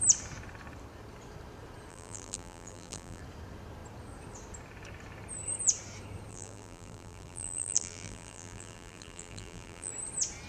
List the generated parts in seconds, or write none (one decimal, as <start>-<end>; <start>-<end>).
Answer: 1.9-3.2; 6.3-9.9